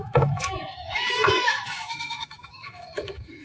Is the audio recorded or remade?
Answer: remade